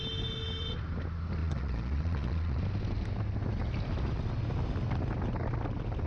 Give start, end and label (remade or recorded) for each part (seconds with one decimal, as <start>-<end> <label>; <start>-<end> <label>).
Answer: 0.0-1.4 recorded; 1.4-2.6 remade; 2.6-6.1 recorded